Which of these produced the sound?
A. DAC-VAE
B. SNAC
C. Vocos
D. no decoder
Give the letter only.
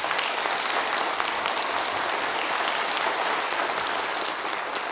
D